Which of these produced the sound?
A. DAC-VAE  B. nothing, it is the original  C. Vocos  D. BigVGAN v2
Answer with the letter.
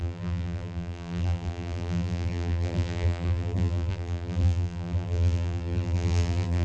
D